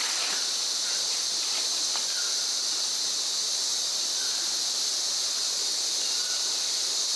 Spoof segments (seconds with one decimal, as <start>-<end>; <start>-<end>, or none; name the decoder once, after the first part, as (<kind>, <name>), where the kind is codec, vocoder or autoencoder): none